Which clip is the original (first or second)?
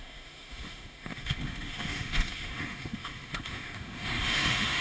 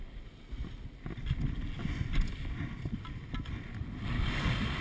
second